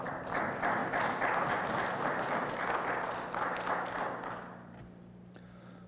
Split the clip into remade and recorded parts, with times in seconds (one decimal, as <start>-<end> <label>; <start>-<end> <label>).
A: 0.0-5.9 recorded